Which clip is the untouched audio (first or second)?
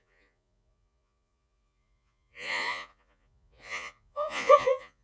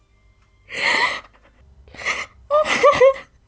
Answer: second